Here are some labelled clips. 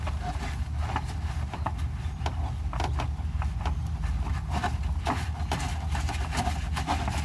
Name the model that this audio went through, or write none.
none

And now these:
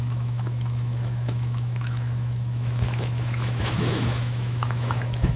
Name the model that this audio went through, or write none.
autoencoder, DAC-VAE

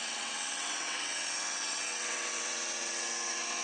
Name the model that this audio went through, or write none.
vocoder, WaveNeXt